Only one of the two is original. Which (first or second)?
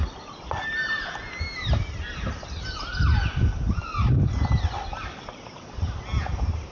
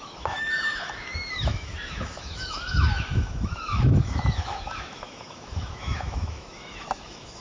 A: first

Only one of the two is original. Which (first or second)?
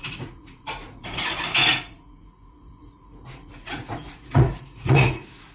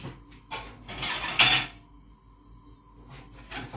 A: second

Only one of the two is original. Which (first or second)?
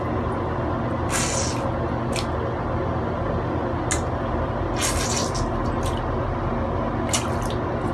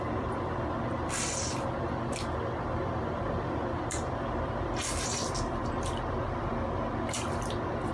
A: first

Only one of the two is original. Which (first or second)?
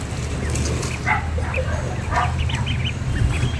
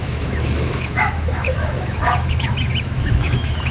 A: first